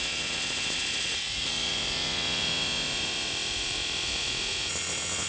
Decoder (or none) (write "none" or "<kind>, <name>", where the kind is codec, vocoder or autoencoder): vocoder, Vocos